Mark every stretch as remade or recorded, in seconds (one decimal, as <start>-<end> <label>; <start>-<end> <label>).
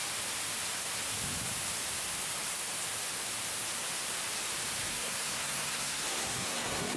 0.0-4.8 recorded; 4.8-7.0 remade